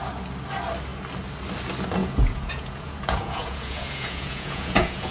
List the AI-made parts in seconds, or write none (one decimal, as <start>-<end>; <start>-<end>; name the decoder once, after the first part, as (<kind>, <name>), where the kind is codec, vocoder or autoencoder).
2.0-5.1 (vocoder, Vocos)